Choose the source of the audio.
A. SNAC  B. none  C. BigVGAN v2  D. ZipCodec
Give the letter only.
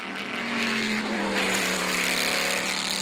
B